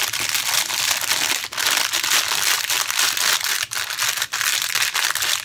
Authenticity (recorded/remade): recorded